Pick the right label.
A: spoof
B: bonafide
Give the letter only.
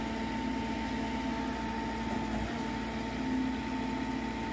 B